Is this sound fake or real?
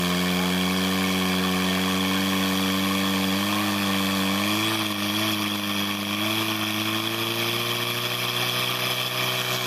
real